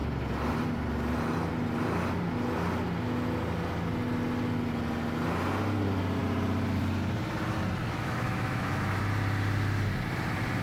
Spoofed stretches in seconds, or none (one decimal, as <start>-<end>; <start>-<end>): 7.8-9.0